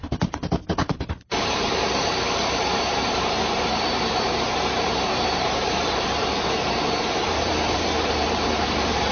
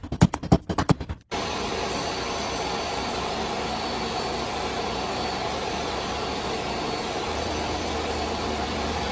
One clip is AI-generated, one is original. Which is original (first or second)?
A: second